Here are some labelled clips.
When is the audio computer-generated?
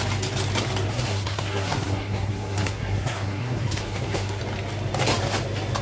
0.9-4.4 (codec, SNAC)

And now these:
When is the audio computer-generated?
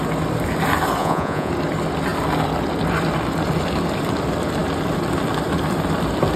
1.0-1.5 (vocoder, Vocos)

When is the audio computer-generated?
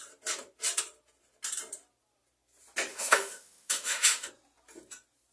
2.9-4.3 (autoencoder, DAC-VAE)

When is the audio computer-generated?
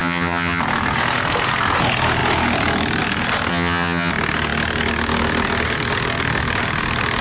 0.0-0.6 (vocoder, HiFi-GAN); 3.5-4.1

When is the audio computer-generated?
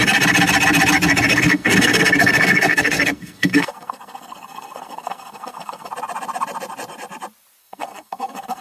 1.3-5.9 (codec, SNAC); 7.6-8.6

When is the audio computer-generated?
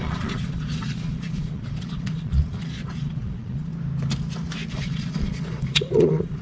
0.0-3.7 (vocoder, Vocos); 4.7-6.4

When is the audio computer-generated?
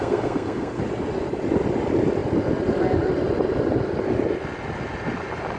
0.0-0.8 (codec, SNAC)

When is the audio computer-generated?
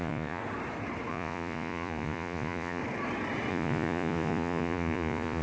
0.0-0.4 (vocoder, Vocos); 1.1-2.8; 3.5-5.4